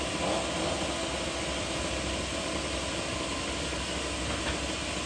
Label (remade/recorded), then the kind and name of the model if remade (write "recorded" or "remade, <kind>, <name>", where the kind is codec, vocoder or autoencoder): recorded